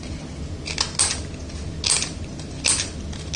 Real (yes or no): yes